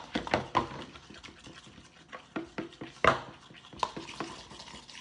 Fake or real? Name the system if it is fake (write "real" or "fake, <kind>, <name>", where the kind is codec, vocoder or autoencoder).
real